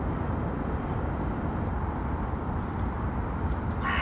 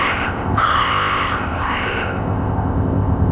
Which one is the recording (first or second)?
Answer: first